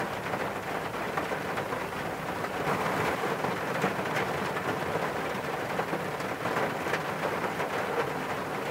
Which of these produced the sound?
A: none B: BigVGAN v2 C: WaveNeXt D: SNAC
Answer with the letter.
A